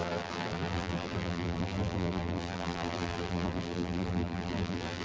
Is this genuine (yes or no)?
no